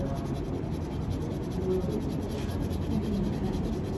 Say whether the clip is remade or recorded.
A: recorded